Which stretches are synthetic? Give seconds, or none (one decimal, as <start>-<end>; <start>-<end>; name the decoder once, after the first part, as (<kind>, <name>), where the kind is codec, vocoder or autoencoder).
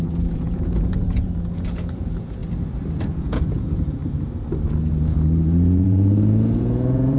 0.0-2.4 (vocoder, Vocos); 3.1-4.0; 4.9-7.2